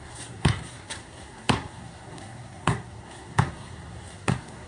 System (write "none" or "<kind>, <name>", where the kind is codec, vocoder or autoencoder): codec, SNAC